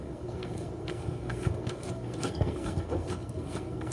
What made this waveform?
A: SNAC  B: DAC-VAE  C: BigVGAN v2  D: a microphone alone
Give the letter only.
A